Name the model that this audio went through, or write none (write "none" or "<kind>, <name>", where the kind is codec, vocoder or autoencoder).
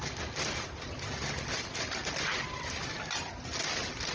none